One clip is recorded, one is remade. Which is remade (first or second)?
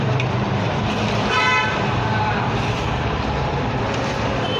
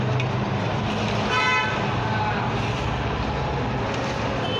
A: first